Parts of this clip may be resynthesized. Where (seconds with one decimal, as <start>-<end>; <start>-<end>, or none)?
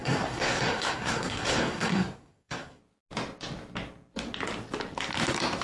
0.0-2.8